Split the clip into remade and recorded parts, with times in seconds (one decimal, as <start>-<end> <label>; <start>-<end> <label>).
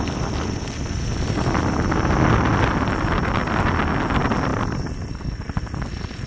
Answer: 0.0-6.3 recorded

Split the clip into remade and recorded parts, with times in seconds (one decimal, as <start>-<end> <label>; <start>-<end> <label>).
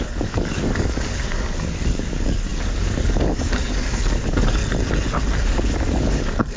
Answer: 0.0-4.6 remade; 4.6-5.4 recorded; 5.4-6.6 remade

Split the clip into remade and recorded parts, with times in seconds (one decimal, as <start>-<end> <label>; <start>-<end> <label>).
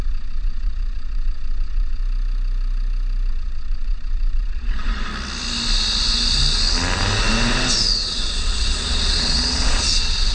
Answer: 0.0-2.0 remade; 2.0-3.3 recorded; 3.3-5.1 remade; 5.1-8.1 recorded; 8.1-10.3 remade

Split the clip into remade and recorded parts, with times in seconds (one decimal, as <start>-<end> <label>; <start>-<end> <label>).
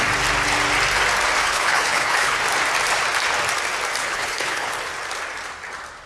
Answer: 0.0-1.4 recorded; 1.4-2.4 remade; 2.4-4.0 recorded; 4.0-4.7 remade; 4.7-6.1 recorded